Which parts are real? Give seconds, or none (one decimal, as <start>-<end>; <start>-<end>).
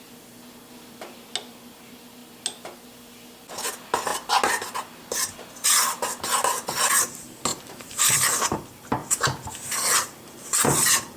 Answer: 0.0-7.5; 8.1-11.2